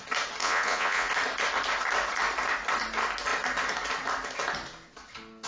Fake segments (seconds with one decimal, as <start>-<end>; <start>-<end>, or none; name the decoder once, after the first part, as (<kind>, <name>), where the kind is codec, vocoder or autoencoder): 0.4-1.1 (vocoder, Vocos)